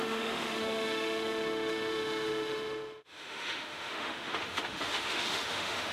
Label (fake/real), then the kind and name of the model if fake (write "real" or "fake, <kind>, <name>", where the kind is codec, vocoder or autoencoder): fake, autoencoder, DAC-VAE